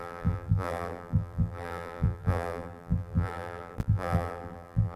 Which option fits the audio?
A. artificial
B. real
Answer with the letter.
A